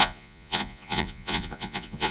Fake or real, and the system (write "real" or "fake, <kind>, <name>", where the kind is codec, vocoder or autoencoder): fake, vocoder, Vocos